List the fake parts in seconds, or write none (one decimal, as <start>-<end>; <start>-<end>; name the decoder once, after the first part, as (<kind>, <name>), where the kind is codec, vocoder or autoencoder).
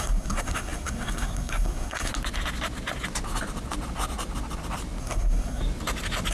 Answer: 0.0-2.1 (codec, SNAC); 5.0-5.6